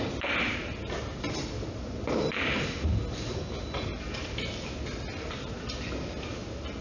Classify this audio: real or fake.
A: real